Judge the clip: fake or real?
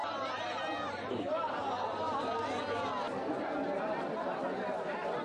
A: real